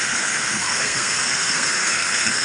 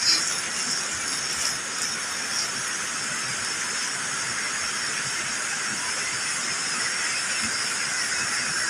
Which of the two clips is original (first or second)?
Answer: second